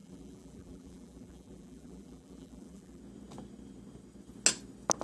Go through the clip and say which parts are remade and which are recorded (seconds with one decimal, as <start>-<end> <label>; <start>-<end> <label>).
0.0-3.0 remade; 3.0-5.0 recorded